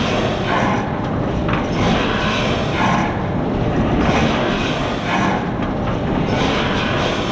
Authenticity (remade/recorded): recorded